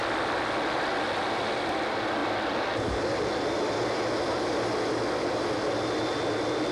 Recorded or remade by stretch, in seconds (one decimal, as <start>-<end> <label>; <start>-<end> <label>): 0.0-6.7 recorded